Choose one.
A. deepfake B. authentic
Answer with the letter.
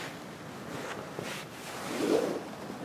B